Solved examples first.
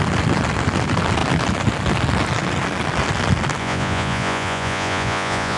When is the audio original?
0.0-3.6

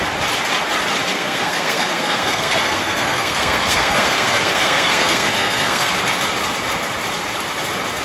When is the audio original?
0.0-1.1; 5.9-8.0

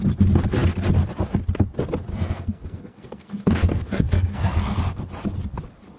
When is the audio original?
0.0-2.1; 4.8-6.0

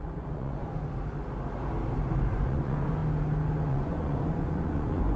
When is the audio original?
0.6-2.3; 3.0-3.7

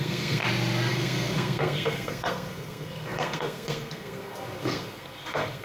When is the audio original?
0.4-0.9

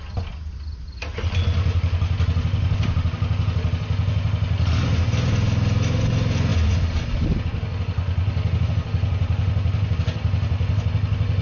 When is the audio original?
0.0-11.4

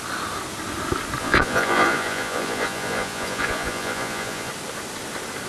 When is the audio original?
0.0-1.2; 4.5-5.5